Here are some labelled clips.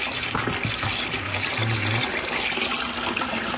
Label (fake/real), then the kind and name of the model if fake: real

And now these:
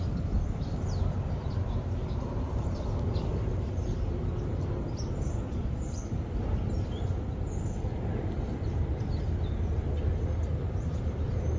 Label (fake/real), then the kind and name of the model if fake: real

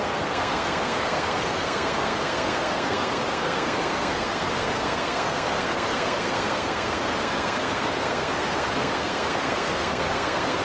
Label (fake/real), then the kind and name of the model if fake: fake, codec, SNAC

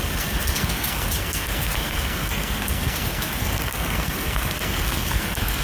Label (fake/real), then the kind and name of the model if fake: fake, codec, SNAC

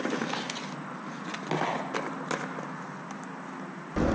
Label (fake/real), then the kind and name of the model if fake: real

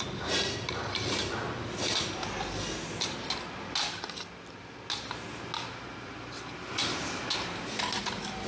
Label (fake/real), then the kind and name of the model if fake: real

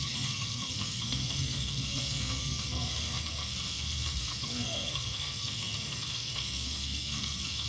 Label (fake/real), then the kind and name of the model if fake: fake, codec, SNAC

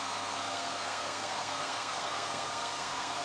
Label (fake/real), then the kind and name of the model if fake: fake, codec, SNAC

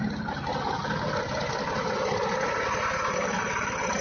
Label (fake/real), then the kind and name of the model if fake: real